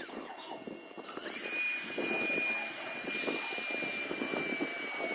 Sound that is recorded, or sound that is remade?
recorded